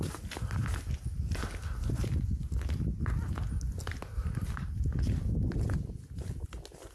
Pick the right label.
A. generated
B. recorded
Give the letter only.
B